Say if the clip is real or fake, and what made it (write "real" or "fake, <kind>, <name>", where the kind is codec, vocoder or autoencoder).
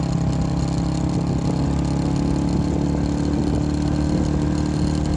real